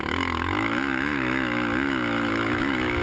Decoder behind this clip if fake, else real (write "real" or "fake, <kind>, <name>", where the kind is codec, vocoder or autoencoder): fake, autoencoder, DAC-VAE